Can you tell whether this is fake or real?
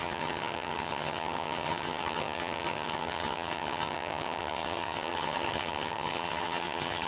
fake